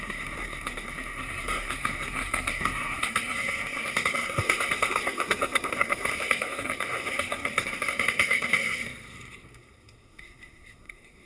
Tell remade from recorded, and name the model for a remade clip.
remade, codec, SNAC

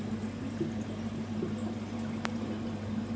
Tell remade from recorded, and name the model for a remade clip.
recorded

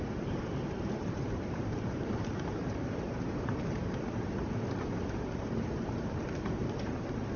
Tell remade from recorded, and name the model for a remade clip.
remade, vocoder, BigVGAN v2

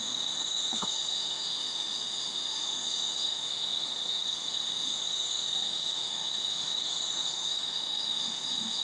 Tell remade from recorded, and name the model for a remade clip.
remade, autoencoder, DAC-VAE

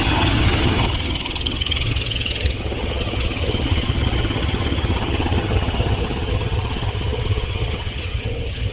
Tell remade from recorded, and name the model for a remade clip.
remade, vocoder, HiFi-GAN